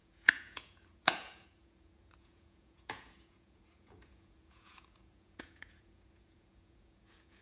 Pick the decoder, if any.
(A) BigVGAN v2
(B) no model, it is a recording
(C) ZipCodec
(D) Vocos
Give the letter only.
D